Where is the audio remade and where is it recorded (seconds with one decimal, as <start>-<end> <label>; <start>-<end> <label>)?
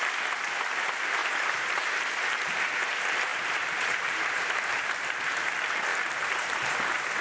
0.0-1.2 recorded; 1.2-2.8 remade; 2.8-3.3 recorded; 3.3-5.5 remade; 5.5-5.9 recorded; 5.9-7.2 remade